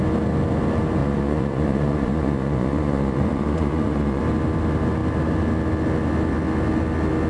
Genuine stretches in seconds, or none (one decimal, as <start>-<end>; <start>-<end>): 0.0-1.0; 4.2-7.3